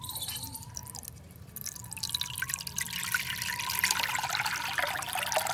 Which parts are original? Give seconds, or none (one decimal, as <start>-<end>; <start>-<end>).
0.0-5.5